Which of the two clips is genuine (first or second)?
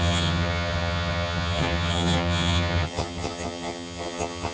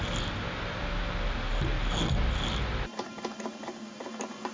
second